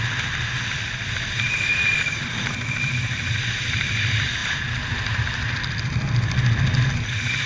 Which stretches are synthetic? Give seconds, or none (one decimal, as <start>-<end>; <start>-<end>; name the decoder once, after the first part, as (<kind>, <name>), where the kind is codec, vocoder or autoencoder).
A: 1.7-2.9 (vocoder, BigVGAN v2)